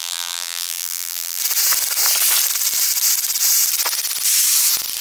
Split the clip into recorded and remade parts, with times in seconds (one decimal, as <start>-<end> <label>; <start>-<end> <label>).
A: 0.0-1.4 remade; 1.4-5.0 recorded